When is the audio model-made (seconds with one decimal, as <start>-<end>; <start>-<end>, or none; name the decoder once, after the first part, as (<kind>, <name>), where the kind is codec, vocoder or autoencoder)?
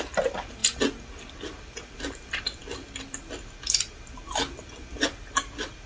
none